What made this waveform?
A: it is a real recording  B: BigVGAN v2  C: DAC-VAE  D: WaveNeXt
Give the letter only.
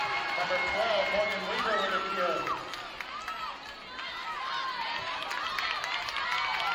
A